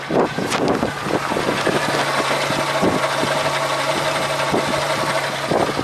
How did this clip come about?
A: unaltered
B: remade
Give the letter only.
A